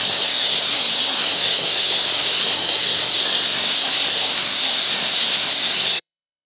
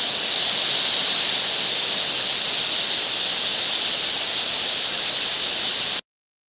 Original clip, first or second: second